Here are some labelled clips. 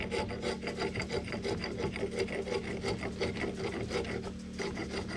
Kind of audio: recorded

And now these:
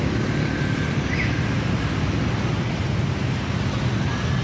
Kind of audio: recorded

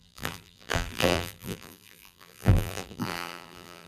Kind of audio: remade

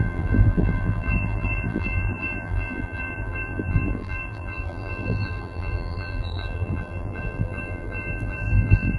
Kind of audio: remade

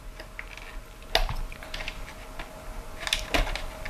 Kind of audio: recorded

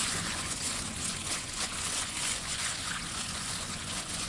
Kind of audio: remade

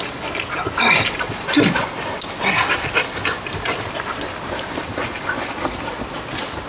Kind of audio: recorded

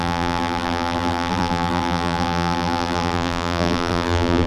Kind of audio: remade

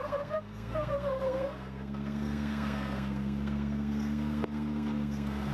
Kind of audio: remade